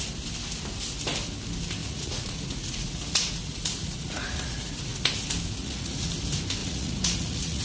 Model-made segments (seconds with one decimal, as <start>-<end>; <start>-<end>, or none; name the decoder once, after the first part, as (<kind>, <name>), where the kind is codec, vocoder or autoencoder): 1.8-5.1 (vocoder, Vocos); 5.6-6.1; 6.6-7.6